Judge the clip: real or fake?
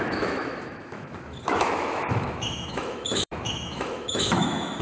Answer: fake